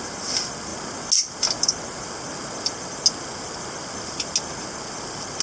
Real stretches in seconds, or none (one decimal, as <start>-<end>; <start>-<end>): 0.0-5.4